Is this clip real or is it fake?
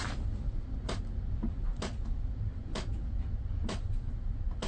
real